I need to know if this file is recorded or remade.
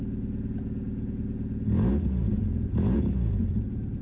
remade